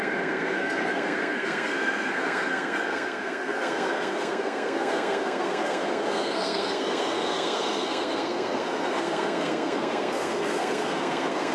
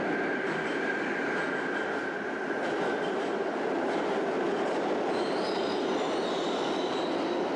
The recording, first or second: second